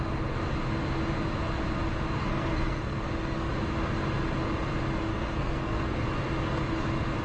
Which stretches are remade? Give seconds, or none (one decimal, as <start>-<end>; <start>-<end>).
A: 2.2-3.5; 5.1-6.0

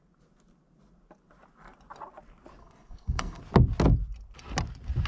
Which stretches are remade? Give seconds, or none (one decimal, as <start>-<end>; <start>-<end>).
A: 2.6-3.4

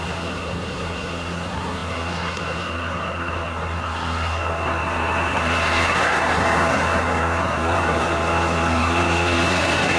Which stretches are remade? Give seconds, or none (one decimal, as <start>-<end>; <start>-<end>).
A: 0.0-10.0

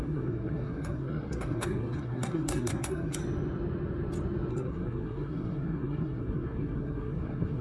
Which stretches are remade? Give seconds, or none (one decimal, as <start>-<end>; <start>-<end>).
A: 0.0-3.2; 4.5-7.6